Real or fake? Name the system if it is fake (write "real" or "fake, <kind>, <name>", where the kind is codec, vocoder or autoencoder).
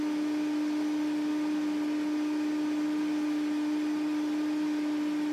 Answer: real